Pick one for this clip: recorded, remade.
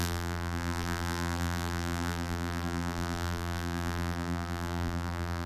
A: remade